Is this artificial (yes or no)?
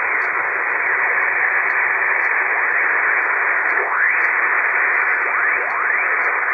no